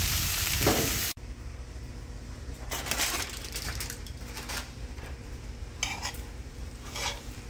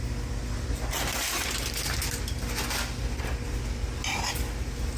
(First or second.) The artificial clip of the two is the first